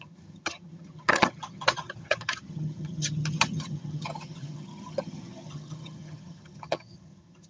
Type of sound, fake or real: fake